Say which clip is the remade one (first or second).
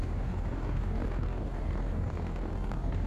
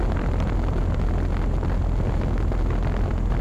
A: first